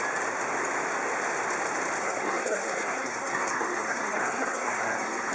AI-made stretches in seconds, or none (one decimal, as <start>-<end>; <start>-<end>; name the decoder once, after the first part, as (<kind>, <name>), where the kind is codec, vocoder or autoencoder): 2.0-5.3 (codec, SNAC)